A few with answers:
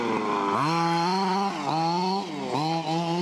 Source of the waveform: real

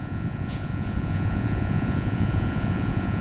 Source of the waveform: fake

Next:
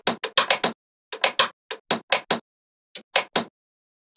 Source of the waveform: real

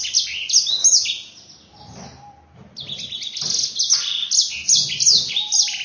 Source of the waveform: real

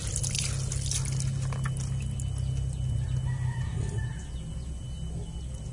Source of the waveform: real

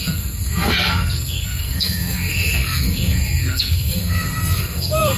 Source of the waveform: fake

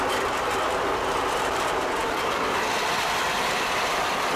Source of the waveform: fake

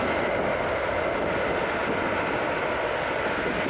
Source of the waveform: real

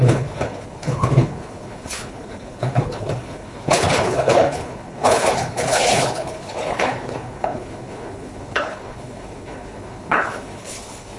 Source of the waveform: fake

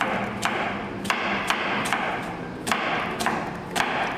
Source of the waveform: real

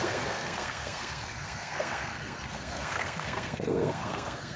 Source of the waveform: fake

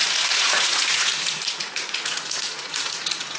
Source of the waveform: fake